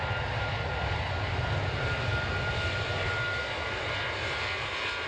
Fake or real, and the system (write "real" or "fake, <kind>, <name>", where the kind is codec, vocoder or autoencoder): real